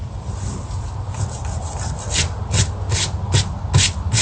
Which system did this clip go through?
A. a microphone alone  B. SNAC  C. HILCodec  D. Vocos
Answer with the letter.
A